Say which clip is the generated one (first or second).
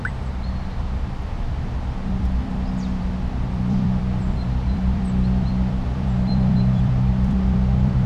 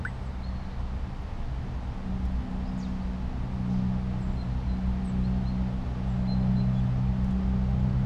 first